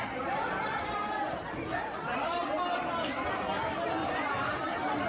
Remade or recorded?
remade